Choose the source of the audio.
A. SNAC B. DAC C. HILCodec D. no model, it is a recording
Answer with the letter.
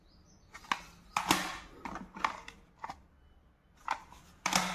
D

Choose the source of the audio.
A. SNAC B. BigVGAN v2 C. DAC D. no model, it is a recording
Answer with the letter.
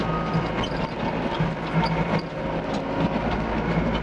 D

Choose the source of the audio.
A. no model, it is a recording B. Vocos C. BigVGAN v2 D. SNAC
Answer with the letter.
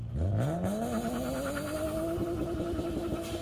A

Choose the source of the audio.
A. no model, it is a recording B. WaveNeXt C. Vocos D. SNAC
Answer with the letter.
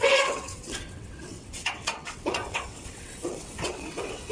B